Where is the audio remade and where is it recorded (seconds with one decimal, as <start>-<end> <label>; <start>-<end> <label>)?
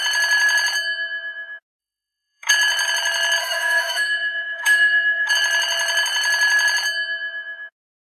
0.0-1.8 recorded; 1.8-2.5 remade; 2.5-3.4 recorded; 3.4-5.3 remade; 5.3-8.1 recorded